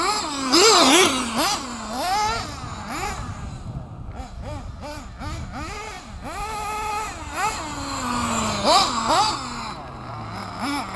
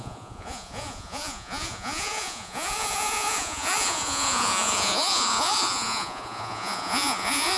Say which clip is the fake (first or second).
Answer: second